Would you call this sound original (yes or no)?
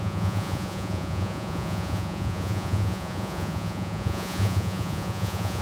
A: no